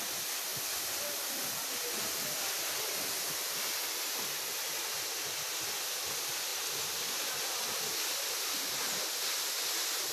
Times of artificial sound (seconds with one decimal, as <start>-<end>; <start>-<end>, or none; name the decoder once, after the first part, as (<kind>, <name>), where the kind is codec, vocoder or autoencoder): none